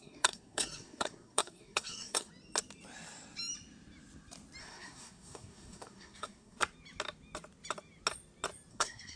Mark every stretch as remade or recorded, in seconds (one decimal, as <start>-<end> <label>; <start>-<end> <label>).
0.0-2.3 remade; 2.3-4.6 recorded; 4.6-6.6 remade; 6.6-8.7 recorded; 8.7-9.2 remade